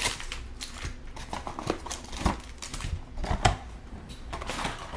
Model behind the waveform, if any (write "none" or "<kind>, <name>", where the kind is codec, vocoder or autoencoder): none